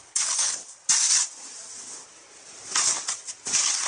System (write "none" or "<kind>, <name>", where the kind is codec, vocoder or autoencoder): none